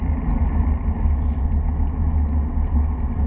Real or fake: real